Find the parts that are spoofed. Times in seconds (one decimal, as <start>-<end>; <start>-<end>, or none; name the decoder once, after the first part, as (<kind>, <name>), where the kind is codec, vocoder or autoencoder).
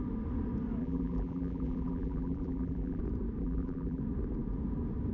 0.8-3.0 (vocoder, BigVGAN v2); 3.4-4.0